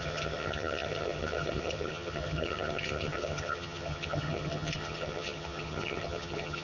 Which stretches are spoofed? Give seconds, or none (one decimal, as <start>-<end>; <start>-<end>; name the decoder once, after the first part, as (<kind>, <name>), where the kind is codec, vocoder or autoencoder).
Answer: 0.0-6.6 (vocoder, HiFi-GAN)